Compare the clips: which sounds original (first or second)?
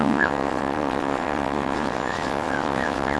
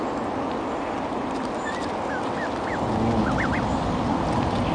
second